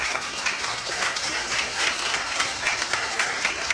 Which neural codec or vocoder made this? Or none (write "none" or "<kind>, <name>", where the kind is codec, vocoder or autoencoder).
codec, SNAC